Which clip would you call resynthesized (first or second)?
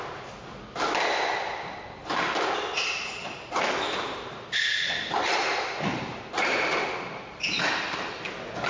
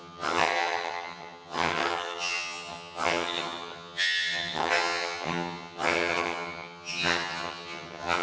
second